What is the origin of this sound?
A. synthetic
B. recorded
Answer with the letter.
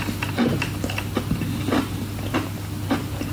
B